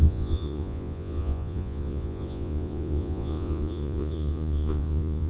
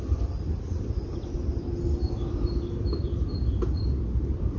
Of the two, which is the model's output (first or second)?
first